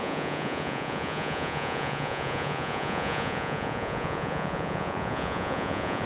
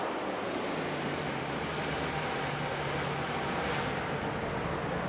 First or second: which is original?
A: second